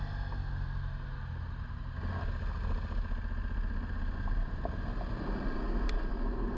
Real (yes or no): yes